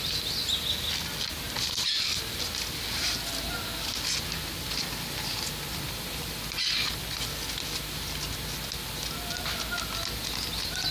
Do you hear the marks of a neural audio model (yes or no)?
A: no